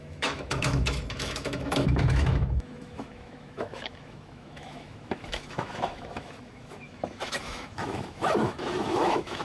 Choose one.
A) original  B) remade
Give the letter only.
B